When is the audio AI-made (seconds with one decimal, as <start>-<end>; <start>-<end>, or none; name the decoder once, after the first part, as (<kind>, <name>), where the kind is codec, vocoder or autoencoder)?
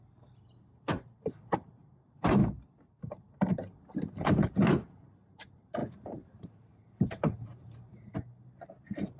0.0-2.4 (vocoder, BigVGAN v2); 3.0-9.2